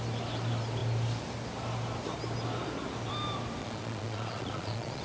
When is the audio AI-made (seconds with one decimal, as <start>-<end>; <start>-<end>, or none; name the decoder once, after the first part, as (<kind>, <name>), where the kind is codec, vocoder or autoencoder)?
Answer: 3.6-5.0 (vocoder, Vocos)